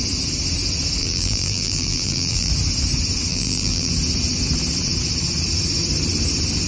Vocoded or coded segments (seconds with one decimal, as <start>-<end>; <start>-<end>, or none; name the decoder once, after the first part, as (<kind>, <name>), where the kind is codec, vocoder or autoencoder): 1.0-2.5 (vocoder, BigVGAN v2); 3.3-3.9

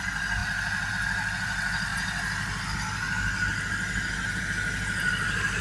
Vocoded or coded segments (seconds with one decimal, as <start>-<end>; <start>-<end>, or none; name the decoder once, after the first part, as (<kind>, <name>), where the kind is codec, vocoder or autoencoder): none

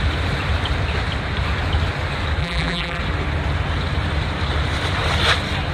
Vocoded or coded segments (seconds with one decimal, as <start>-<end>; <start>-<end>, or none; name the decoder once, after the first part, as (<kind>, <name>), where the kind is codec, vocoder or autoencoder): 2.4-3.0 (vocoder, BigVGAN v2)

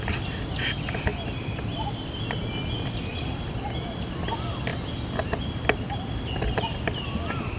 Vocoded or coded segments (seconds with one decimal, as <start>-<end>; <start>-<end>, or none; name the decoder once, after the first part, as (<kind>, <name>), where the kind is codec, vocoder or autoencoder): 1.1-2.1 (vocoder, BigVGAN v2); 3.1-3.9

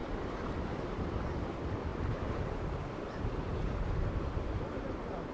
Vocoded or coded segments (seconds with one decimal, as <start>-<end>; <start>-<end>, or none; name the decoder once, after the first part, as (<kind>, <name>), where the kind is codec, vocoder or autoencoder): 0.0-1.3 (vocoder, BigVGAN v2); 1.9-5.3

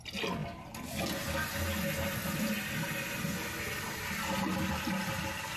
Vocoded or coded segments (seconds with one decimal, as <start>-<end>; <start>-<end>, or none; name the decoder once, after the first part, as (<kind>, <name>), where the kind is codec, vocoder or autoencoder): none

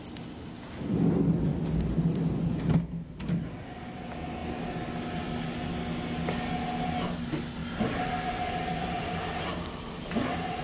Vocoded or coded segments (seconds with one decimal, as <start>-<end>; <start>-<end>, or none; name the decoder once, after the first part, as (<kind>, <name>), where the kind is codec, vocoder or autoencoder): 1.5-2.6 (vocoder, BigVGAN v2); 7.6-9.5

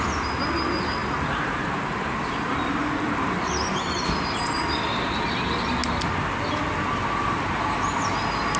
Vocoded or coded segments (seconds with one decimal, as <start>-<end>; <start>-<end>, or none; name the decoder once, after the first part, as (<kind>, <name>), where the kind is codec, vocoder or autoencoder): 1.0-4.5 (vocoder, BigVGAN v2)